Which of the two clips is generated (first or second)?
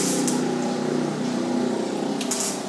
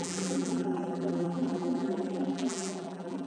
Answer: second